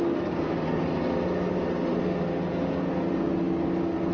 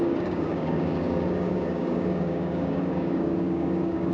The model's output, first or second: second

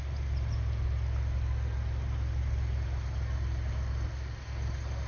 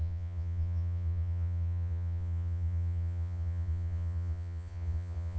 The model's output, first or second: second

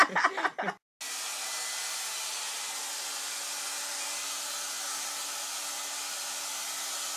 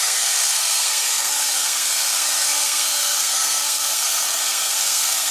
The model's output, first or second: second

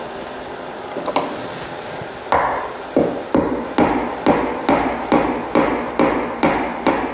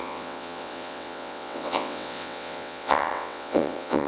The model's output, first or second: second